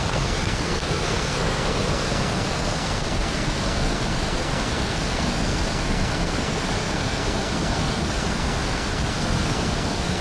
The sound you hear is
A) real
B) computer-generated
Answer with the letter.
B